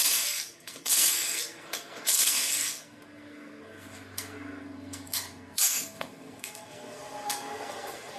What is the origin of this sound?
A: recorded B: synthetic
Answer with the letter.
B